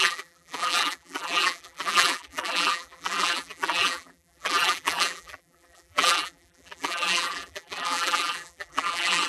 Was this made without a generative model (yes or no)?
no